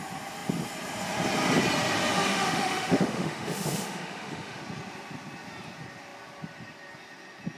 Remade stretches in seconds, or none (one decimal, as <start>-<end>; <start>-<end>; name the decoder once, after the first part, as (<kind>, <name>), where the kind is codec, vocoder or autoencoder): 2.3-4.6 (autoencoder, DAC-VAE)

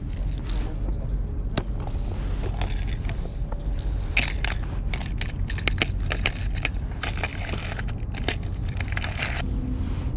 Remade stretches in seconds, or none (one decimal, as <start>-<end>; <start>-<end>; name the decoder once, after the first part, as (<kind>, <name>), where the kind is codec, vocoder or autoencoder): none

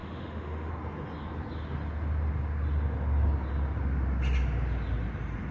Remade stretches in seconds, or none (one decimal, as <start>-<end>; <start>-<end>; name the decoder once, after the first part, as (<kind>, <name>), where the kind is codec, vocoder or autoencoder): 0.0-0.7 (autoencoder, DAC-VAE)

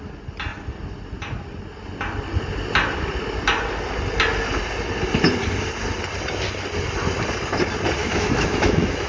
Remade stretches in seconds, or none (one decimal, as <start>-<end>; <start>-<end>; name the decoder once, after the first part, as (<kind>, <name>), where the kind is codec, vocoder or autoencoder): 8.0-9.1 (autoencoder, DAC-VAE)